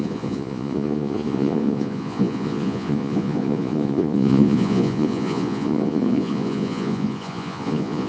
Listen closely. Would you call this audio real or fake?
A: fake